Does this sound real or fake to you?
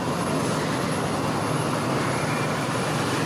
real